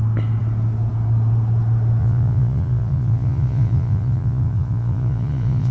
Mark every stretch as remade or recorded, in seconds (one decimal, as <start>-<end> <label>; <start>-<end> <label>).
0.0-2.0 recorded; 2.0-5.7 remade